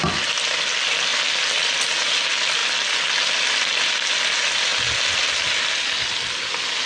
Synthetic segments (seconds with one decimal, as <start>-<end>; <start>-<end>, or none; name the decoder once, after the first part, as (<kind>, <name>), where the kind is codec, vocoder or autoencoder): none